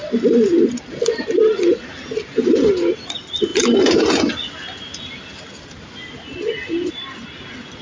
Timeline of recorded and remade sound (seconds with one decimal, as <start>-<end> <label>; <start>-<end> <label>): 0.0-7.8 recorded